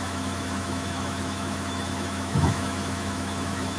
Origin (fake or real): fake